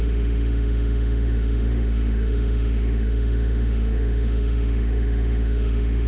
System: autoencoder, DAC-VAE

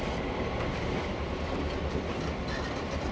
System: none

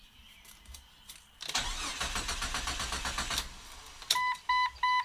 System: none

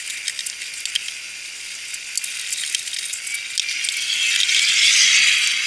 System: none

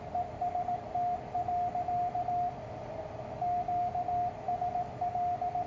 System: none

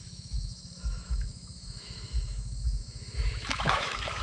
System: autoencoder, DAC-VAE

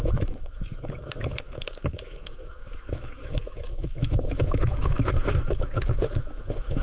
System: autoencoder, DAC-VAE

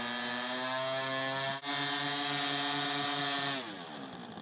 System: none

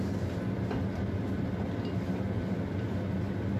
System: none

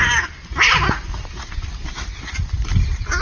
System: none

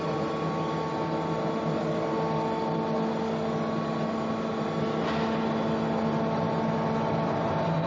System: none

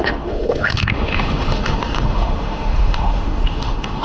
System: autoencoder, DAC-VAE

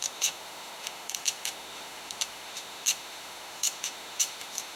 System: autoencoder, DAC-VAE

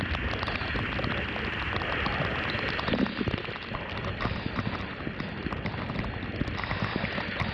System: none